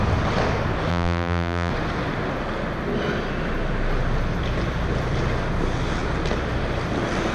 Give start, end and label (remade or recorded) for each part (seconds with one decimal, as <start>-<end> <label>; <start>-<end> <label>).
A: 0.0-0.9 recorded; 0.9-1.7 remade; 1.7-7.3 recorded

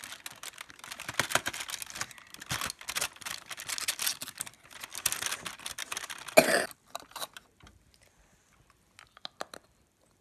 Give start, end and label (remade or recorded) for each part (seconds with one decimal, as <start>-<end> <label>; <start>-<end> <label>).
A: 0.0-10.2 recorded

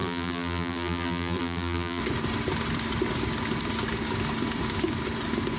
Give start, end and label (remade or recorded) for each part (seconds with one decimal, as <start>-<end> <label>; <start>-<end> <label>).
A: 0.0-2.0 remade; 2.0-5.6 recorded

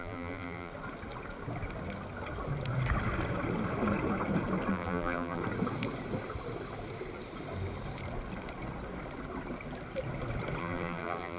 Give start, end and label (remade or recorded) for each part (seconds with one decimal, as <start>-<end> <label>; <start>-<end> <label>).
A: 0.0-0.7 remade; 0.7-4.7 recorded; 4.7-5.4 remade; 5.4-10.6 recorded; 10.6-11.4 remade

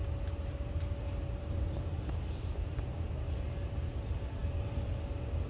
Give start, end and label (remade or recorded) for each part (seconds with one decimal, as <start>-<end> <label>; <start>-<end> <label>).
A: 0.0-3.1 remade; 3.1-5.5 recorded

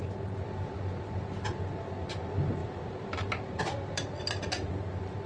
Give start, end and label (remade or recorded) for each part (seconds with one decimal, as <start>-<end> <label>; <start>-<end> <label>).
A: 0.0-2.6 recorded; 2.6-4.7 remade; 4.7-5.3 recorded

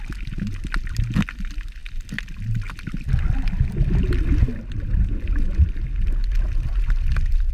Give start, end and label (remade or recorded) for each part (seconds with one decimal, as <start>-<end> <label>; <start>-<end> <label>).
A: 0.0-7.5 recorded